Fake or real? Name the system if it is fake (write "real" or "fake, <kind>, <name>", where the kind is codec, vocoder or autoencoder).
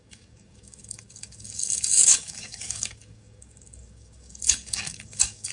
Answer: fake, codec, DAC